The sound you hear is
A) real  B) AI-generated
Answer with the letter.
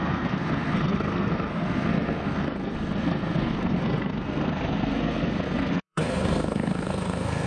B